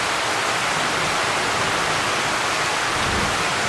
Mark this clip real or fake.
real